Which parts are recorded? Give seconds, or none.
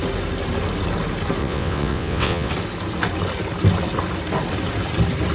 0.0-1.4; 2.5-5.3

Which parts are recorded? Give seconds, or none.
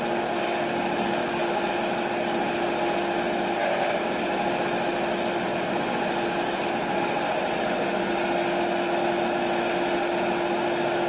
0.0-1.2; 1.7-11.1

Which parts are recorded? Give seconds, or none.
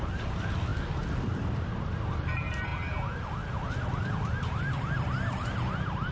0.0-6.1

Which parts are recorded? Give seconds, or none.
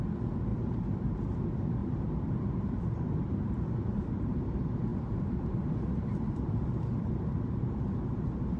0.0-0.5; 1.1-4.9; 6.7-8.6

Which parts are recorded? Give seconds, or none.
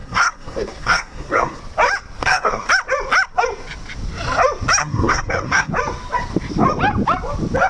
1.6-2.2; 2.7-4.8; 5.7-7.7